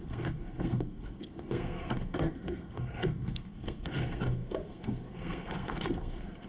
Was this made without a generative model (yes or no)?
no